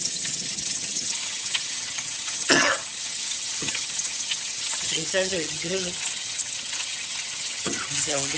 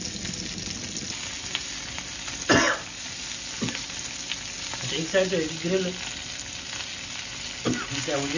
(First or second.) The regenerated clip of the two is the first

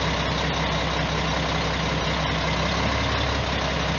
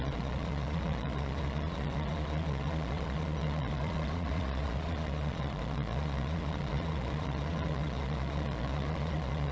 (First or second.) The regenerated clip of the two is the second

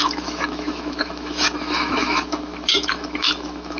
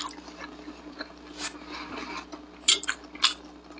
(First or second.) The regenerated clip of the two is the first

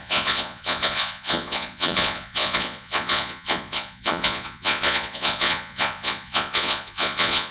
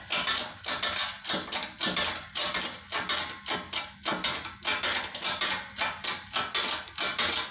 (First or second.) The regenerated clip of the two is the first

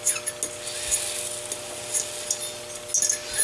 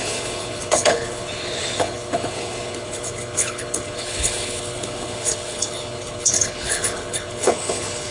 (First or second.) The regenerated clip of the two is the second